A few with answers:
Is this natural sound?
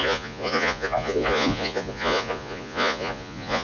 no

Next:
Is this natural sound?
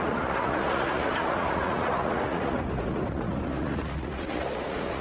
no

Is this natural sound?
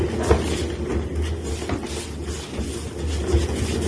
yes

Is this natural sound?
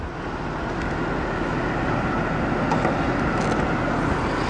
yes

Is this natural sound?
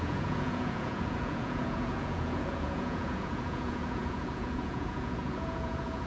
no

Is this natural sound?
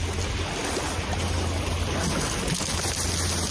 yes